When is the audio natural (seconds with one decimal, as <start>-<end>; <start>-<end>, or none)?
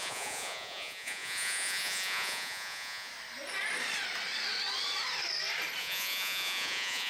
3.1-5.8